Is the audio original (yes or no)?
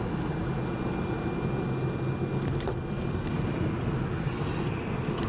yes